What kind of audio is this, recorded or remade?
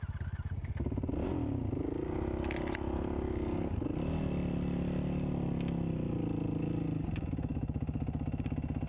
recorded